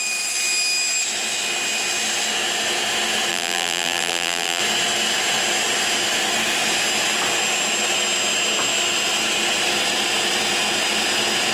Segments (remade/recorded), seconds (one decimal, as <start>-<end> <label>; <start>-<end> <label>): 0.0-3.3 recorded; 3.3-4.6 remade; 4.6-11.5 recorded

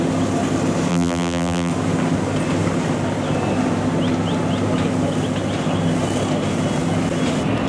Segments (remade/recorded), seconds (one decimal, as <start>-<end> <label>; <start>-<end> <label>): 0.0-0.9 recorded; 0.9-1.7 remade; 1.7-7.7 recorded

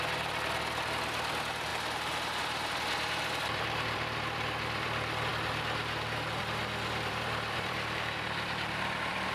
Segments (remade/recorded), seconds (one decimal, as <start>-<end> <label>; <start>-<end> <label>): 0.0-1.7 remade; 1.7-2.4 recorded; 2.4-5.3 remade; 5.3-6.4 recorded; 6.4-9.3 remade